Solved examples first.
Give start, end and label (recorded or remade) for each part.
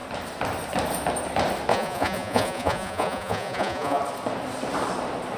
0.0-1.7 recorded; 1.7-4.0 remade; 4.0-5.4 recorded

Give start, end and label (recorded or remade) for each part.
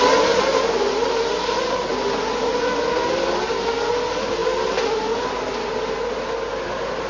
0.0-7.1 recorded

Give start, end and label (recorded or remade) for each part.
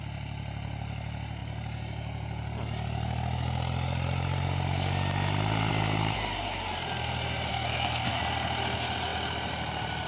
0.0-7.5 recorded; 7.5-8.2 remade; 8.2-10.1 recorded